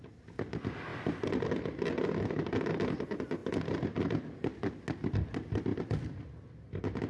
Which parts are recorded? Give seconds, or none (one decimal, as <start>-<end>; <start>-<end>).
0.0-0.9; 1.6-5.7; 6.2-7.1